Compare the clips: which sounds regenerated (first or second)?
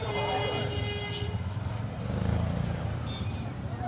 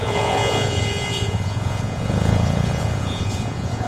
second